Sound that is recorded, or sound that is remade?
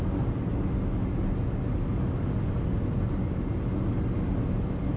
recorded